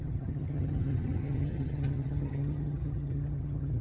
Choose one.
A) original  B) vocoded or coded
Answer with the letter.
B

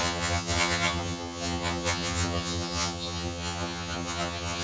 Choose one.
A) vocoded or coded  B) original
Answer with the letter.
A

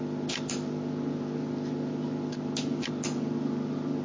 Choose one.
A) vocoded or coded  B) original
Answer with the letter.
B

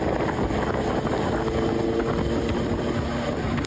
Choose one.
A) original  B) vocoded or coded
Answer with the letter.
A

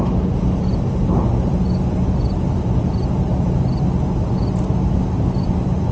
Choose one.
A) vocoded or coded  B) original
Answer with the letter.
B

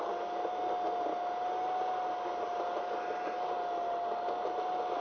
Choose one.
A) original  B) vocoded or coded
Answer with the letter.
A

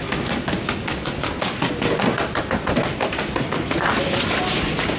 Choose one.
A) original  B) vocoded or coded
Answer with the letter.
A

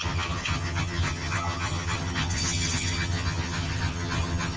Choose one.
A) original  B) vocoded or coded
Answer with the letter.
B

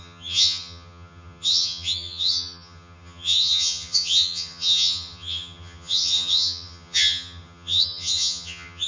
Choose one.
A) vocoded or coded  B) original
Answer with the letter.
A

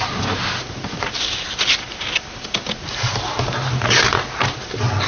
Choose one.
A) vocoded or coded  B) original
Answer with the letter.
B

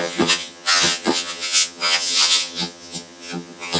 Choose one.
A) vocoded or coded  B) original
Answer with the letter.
A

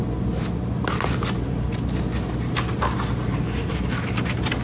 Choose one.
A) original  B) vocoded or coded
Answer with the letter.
A